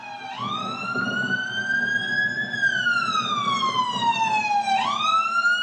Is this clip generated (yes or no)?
no